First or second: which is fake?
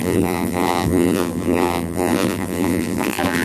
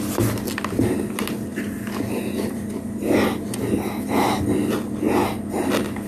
first